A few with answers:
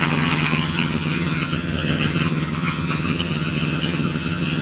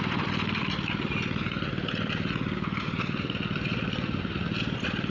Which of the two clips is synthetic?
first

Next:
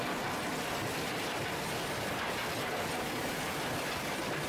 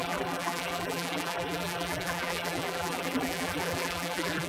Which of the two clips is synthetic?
second